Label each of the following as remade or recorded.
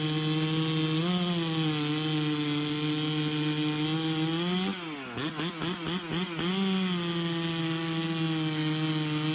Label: recorded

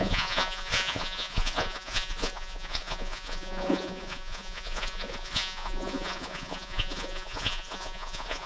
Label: remade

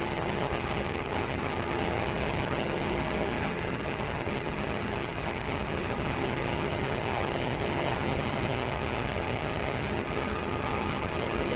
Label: remade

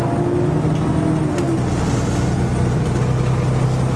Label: recorded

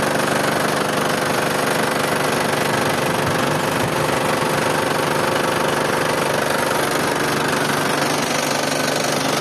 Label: recorded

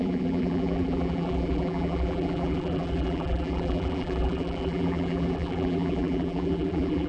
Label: remade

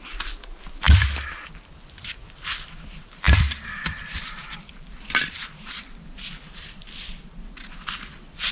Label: recorded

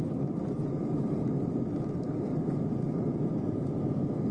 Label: recorded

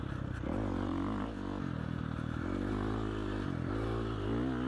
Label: recorded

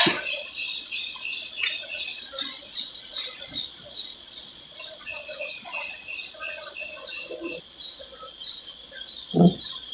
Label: remade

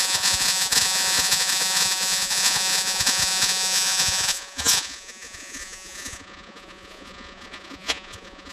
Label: remade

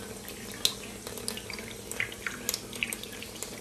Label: recorded